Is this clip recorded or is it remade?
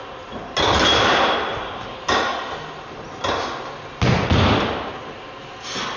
recorded